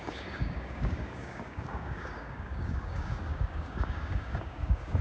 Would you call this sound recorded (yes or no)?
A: no